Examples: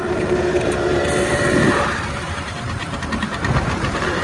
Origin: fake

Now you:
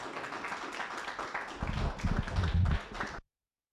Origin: real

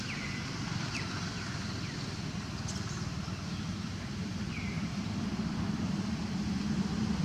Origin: real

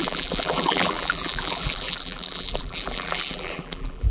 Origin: fake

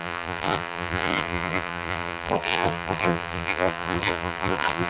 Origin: fake